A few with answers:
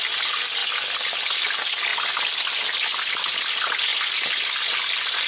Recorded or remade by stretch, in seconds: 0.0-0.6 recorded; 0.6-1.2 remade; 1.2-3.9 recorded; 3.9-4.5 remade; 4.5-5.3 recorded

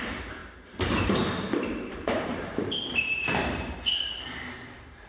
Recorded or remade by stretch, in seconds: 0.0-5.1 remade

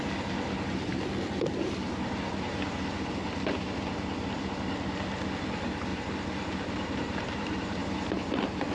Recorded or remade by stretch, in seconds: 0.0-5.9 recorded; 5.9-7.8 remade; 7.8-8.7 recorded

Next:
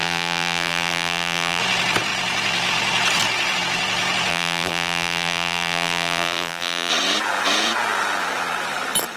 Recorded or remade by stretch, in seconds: 0.0-1.6 remade; 1.6-4.3 recorded; 4.3-6.9 remade; 6.9-9.2 recorded

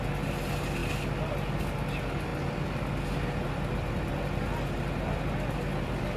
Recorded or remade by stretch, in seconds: 0.0-6.2 recorded

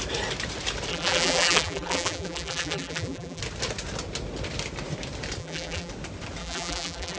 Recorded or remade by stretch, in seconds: 0.0-0.9 recorded; 0.9-3.4 remade; 3.4-5.4 recorded; 5.4-5.9 remade; 5.9-6.4 recorded; 6.4-7.2 remade

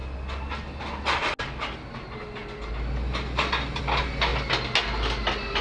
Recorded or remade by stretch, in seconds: 0.0-5.6 recorded

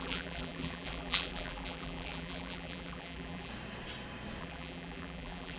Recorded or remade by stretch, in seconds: 0.0-3.5 remade; 3.5-4.4 recorded; 4.4-5.6 remade